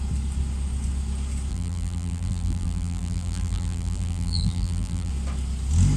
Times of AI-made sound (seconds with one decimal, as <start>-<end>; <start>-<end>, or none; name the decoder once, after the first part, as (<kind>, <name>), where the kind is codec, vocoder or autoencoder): 1.5-5.1 (vocoder, BigVGAN v2)